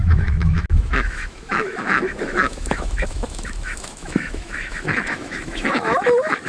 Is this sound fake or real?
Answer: fake